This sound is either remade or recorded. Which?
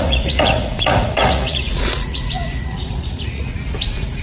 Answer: remade